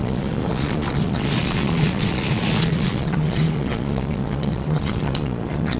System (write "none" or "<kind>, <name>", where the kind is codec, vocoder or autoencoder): vocoder, Vocos